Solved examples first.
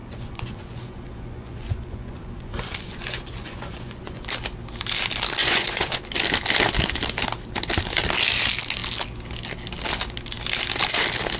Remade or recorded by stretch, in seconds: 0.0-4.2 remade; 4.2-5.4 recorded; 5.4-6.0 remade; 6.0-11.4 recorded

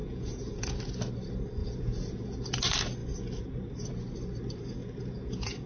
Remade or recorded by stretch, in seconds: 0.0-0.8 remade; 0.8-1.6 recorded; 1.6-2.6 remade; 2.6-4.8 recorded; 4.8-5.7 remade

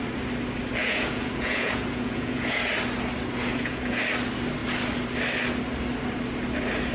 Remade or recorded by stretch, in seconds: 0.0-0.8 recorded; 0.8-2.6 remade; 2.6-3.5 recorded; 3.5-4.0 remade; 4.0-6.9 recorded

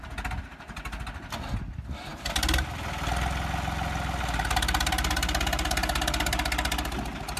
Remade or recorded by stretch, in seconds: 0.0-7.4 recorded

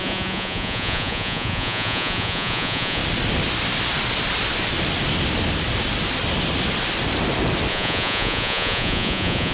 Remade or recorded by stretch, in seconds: 0.0-3.0 remade; 3.0-7.7 recorded; 7.7-9.5 remade